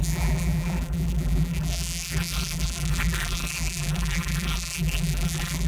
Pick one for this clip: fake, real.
fake